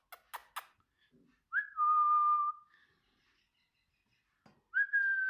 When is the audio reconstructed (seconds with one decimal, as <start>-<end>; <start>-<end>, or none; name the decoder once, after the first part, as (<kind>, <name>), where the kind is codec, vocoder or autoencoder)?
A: none